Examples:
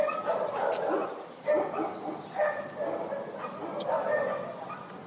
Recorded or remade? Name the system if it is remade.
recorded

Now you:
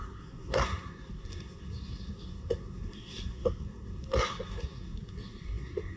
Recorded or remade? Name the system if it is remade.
remade, codec, SNAC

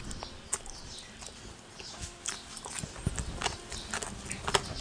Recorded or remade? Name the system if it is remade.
recorded